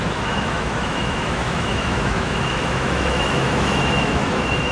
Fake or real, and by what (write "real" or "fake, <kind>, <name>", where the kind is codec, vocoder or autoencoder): fake, autoencoder, DAC-VAE